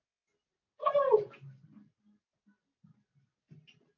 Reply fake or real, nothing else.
real